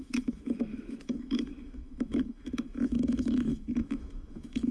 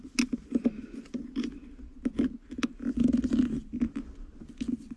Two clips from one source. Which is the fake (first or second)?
first